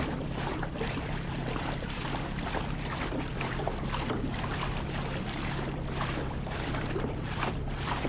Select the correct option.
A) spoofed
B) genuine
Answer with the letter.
A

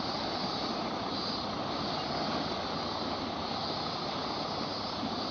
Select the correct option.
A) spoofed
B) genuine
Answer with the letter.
B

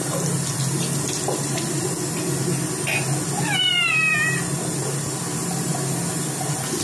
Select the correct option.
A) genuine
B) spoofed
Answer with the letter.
A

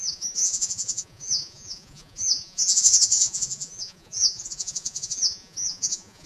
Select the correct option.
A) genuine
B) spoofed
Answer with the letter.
B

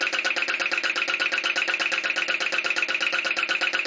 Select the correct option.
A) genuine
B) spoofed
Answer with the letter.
A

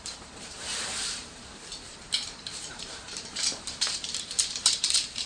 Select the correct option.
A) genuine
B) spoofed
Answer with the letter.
B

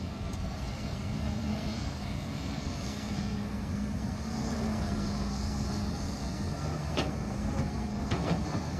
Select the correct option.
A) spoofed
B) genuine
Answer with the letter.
A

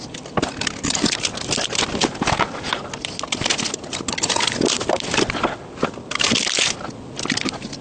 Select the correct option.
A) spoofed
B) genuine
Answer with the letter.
B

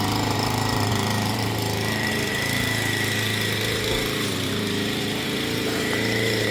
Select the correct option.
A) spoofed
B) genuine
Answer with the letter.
A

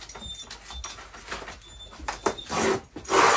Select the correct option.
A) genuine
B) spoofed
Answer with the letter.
A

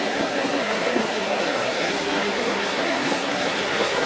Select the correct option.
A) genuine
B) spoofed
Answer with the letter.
B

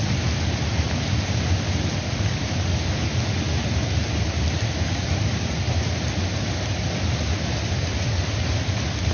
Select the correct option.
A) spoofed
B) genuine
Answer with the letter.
B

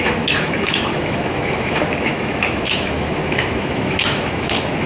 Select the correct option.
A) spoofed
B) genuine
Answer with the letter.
A